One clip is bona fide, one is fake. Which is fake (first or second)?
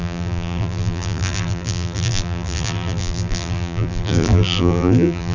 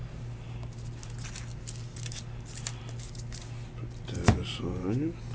first